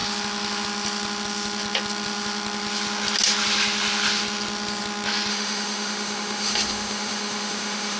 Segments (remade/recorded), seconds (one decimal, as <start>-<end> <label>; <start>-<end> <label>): 0.0-5.3 recorded; 5.3-8.0 remade